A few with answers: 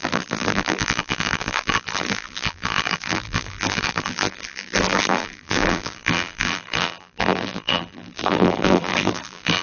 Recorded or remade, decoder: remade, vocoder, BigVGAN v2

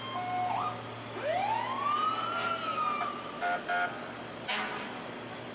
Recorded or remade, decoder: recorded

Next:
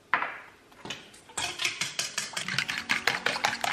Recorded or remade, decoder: recorded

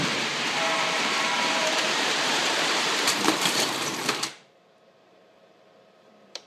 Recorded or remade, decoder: remade, vocoder, BigVGAN v2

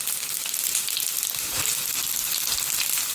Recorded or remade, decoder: recorded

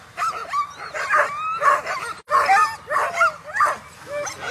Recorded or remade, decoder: recorded